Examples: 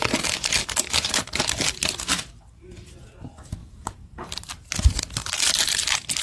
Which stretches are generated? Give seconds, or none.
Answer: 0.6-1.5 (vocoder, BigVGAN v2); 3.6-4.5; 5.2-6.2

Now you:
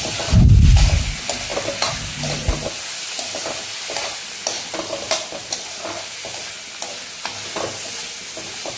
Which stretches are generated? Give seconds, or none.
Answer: none

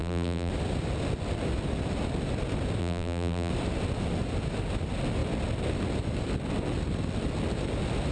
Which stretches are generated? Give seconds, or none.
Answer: 0.0-0.5 (vocoder, BigVGAN v2); 2.8-3.5

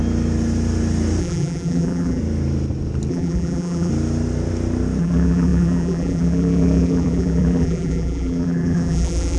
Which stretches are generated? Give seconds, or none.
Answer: 1.2-2.2 (vocoder, BigVGAN v2); 3.1-3.9; 5.0-9.4

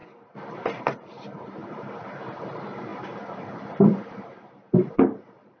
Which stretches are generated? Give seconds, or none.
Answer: 0.8-5.6 (vocoder, BigVGAN v2)